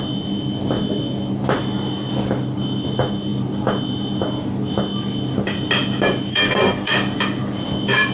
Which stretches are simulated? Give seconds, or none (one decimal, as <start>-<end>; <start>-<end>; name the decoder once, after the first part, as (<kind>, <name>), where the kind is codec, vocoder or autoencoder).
6.3-6.9 (codec, SNAC)